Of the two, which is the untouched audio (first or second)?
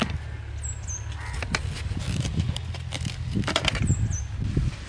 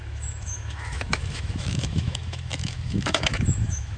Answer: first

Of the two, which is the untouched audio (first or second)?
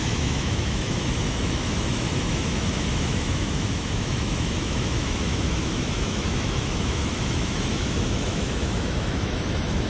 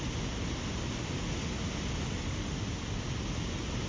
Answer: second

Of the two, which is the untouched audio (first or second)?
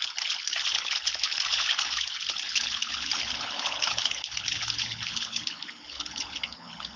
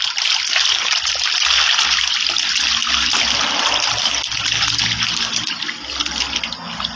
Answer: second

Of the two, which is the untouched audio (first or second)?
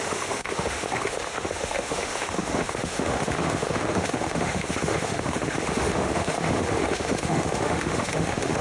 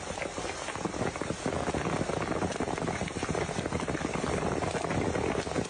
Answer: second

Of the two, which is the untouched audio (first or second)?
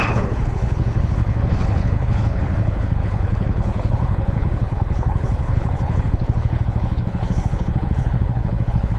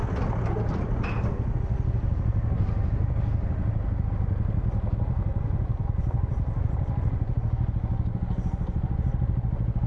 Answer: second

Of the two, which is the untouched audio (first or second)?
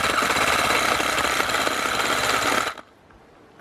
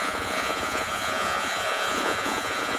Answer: first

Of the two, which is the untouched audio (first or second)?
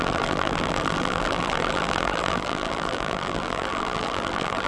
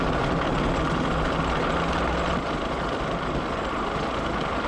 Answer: second